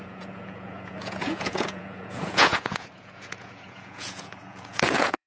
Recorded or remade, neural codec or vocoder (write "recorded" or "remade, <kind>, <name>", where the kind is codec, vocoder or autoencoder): remade, vocoder, Vocos